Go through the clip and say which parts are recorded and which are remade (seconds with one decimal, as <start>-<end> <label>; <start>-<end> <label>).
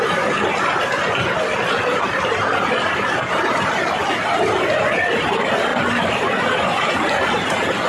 0.0-5.7 recorded; 5.7-6.9 remade; 6.9-7.9 recorded